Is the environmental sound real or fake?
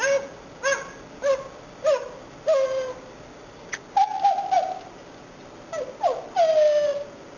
real